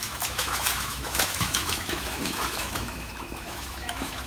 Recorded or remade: remade